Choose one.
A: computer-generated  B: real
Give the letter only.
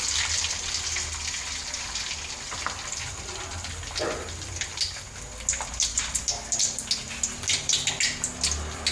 B